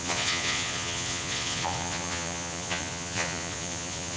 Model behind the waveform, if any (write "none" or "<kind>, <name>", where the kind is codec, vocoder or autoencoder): vocoder, Vocos